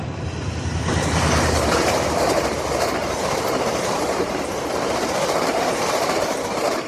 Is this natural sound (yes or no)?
no